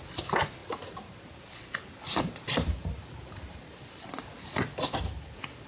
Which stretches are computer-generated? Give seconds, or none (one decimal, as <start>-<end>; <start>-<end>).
0.6-1.2; 2.1-3.6

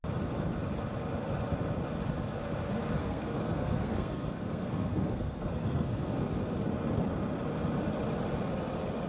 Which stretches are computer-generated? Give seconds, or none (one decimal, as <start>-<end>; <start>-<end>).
3.0-6.2